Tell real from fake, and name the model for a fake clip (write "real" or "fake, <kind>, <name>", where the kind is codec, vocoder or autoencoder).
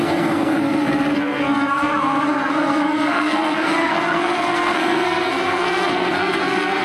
fake, codec, SNAC